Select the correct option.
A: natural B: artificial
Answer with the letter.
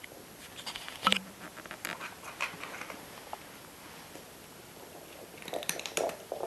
B